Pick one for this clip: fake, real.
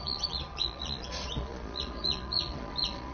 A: fake